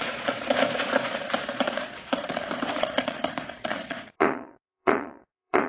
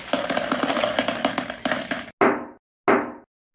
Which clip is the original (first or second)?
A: second